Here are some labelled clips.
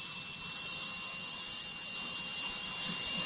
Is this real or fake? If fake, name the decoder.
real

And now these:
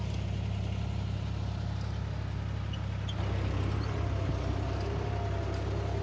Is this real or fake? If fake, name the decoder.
real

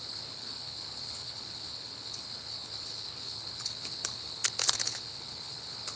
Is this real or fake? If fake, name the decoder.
fake, codec, HILCodec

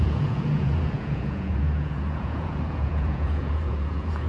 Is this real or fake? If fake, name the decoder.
fake, vocoder, Vocos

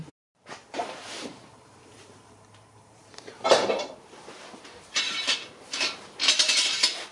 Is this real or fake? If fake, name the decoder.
fake, vocoder, BigVGAN v2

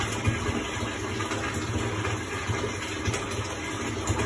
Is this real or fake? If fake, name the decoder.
real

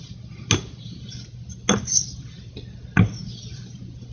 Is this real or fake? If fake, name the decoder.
real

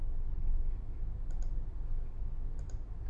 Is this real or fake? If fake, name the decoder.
real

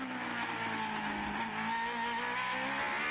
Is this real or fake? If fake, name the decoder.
real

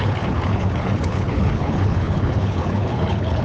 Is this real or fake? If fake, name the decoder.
fake, codec, HILCodec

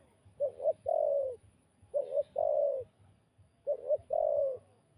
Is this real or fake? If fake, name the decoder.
fake, codec, DAC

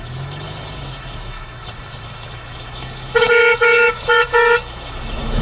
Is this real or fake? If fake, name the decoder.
fake, autoencoder, DAC-VAE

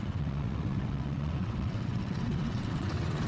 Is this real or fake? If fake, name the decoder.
fake, vocoder, WaveNeXt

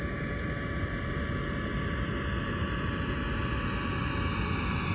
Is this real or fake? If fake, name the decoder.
real